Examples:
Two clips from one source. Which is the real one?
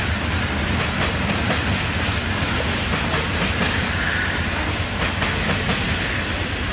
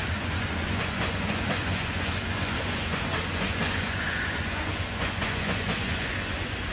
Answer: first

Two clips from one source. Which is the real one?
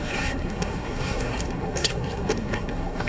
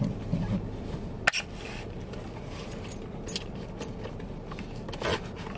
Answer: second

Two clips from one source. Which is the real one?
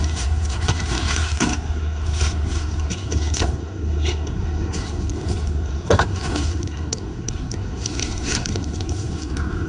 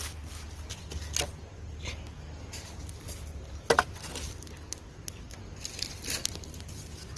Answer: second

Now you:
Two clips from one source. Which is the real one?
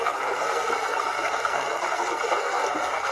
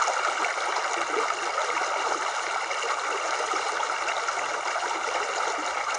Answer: second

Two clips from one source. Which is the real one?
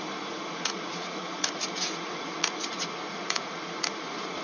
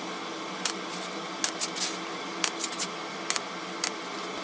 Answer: second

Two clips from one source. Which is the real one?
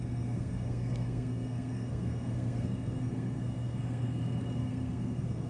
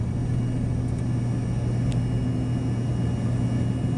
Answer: second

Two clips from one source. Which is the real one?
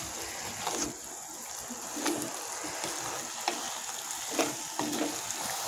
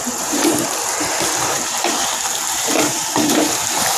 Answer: first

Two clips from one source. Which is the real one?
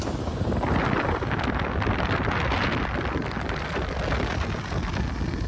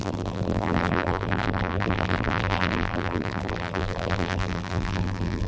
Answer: first